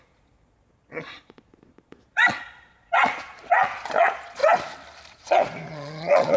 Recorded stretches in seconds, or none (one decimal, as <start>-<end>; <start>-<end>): 4.4-5.1